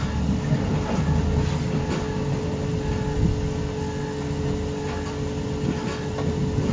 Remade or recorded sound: recorded